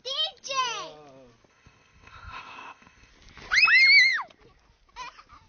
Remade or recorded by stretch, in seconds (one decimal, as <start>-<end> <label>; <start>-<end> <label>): 0.0-1.5 recorded; 1.5-3.1 remade; 3.1-5.5 recorded

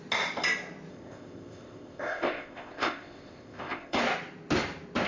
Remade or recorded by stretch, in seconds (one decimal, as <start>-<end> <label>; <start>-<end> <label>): 0.0-0.9 recorded; 0.9-4.0 remade; 4.0-5.1 recorded

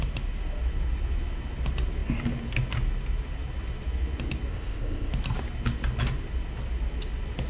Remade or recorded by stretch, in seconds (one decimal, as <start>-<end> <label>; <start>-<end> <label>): 0.0-4.5 recorded; 4.5-5.1 remade; 5.1-7.5 recorded

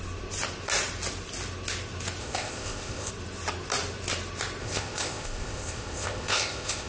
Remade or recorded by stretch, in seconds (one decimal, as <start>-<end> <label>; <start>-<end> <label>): 0.0-2.2 recorded; 2.2-3.1 remade; 3.1-4.6 recorded; 4.6-6.9 remade